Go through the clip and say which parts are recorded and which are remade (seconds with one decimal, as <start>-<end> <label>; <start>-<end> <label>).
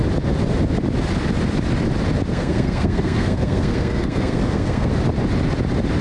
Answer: 0.0-2.3 recorded; 2.3-4.9 remade; 4.9-6.0 recorded